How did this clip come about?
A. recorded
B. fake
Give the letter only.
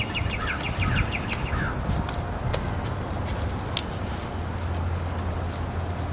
A